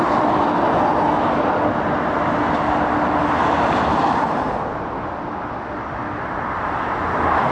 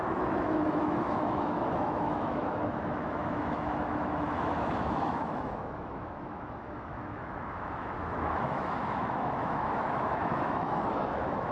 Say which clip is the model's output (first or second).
second